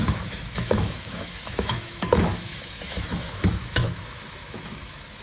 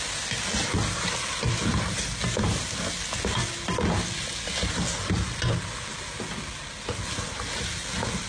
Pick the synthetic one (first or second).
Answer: first